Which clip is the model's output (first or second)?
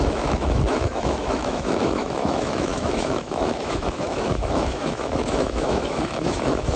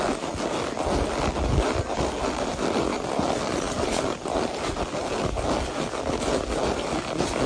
first